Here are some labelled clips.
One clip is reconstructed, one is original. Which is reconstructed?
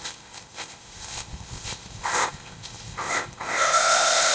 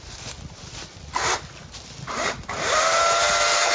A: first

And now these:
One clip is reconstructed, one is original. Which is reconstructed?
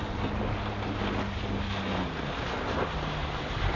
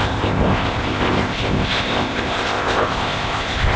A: second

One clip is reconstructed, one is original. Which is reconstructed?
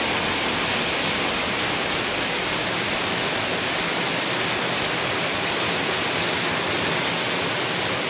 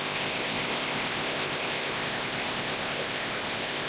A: second